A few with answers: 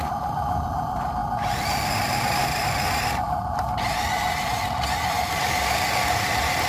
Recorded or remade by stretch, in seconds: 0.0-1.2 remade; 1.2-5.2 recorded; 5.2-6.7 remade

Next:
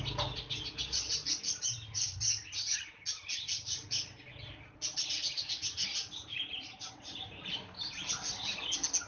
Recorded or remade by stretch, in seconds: 0.0-6.0 recorded; 6.0-7.0 remade; 7.0-9.1 recorded

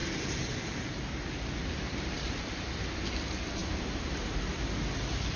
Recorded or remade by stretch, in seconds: 0.0-1.0 remade; 1.0-1.6 recorded; 1.6-2.5 remade; 2.5-3.6 recorded; 3.6-4.7 remade; 4.7-5.4 recorded

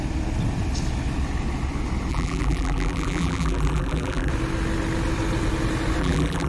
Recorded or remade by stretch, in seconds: 0.0-2.1 recorded; 2.1-4.3 remade; 4.3-6.0 recorded; 6.0-6.5 remade

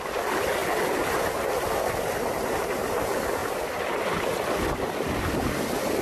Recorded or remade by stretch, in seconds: 0.0-0.6 remade; 0.6-2.0 recorded; 2.0-3.4 remade; 3.4-4.6 recorded; 4.6-6.0 remade